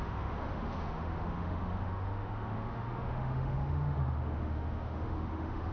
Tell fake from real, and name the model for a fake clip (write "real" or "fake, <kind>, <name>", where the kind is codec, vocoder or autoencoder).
fake, autoencoder, DAC-VAE